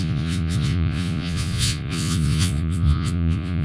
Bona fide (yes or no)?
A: no